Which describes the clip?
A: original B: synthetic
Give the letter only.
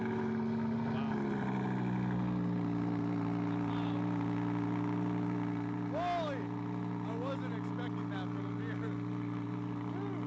A